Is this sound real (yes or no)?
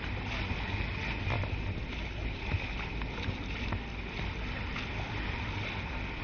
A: yes